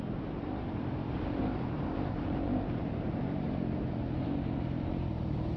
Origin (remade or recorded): remade